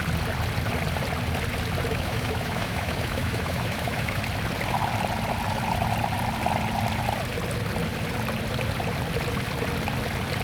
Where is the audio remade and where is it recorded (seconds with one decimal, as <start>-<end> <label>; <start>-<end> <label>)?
0.0-1.9 recorded; 1.9-4.2 remade; 4.2-10.4 recorded